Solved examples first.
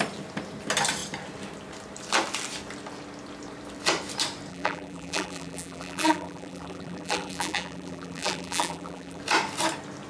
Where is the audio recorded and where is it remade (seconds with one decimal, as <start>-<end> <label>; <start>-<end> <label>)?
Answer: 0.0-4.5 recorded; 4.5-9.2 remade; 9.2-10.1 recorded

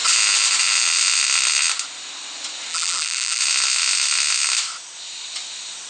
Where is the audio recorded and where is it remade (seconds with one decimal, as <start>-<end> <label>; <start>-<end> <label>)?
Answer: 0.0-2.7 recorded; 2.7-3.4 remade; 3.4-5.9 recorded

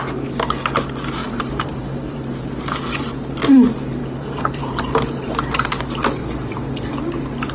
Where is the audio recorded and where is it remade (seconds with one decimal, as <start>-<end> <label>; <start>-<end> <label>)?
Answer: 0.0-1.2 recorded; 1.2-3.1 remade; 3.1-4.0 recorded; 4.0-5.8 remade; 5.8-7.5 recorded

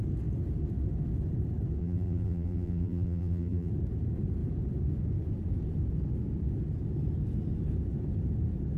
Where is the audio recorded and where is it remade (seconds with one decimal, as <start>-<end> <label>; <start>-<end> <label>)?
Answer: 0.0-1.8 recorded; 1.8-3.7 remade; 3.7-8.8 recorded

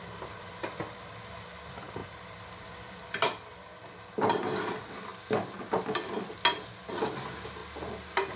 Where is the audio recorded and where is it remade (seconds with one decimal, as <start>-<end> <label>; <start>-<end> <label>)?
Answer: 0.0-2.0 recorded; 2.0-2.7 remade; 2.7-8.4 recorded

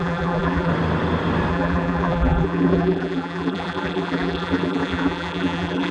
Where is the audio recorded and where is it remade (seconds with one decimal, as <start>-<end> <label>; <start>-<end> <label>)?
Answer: 0.0-0.7 remade; 0.7-1.5 recorded; 1.5-5.9 remade

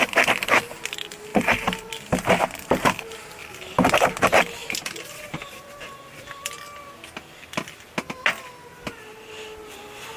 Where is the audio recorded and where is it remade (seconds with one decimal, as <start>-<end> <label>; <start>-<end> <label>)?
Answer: 0.0-1.3 recorded; 1.3-2.1 remade; 2.1-4.6 recorded; 4.6-5.3 remade; 5.3-10.2 recorded